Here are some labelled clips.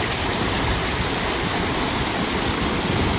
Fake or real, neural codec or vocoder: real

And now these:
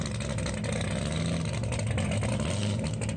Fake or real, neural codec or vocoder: real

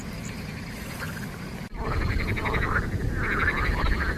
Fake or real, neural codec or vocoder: real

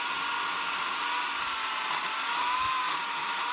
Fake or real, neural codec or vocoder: real